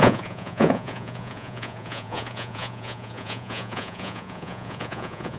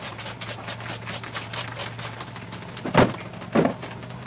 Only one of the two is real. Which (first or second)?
second